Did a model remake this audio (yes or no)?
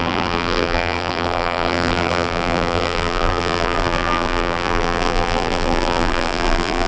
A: yes